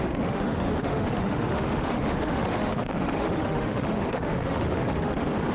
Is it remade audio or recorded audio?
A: remade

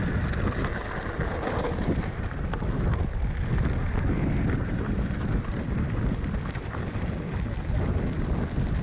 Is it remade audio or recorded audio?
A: recorded